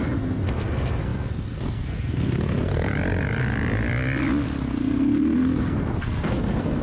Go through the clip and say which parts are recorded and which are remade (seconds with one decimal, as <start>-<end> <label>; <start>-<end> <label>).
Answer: 0.0-2.9 remade; 2.9-4.7 recorded; 4.7-6.8 remade